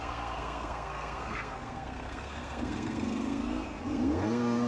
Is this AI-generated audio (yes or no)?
yes